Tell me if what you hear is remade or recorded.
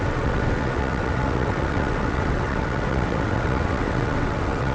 remade